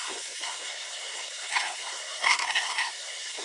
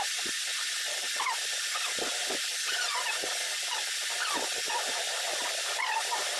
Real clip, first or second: second